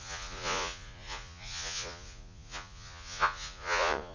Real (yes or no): no